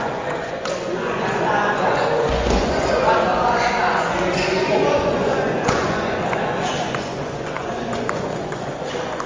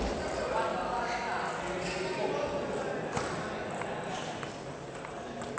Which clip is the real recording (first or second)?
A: second